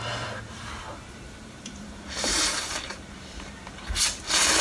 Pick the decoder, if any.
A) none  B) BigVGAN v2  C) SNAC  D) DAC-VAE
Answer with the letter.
B